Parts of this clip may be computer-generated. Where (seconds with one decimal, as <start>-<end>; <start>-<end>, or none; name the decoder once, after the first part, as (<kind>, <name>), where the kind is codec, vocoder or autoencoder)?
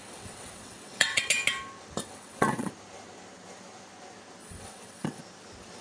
0.0-1.3 (vocoder, WaveNeXt); 2.0-2.7; 4.4-5.2